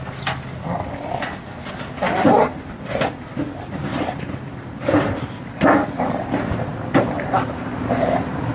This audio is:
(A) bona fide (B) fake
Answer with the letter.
A